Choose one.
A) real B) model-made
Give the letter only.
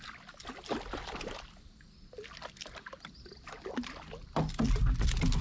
A